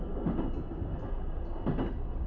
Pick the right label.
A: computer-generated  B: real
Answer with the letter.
B